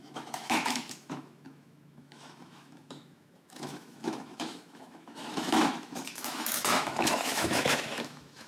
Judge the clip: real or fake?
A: fake